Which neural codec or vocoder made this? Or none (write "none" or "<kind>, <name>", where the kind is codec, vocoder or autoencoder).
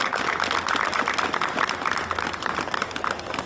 none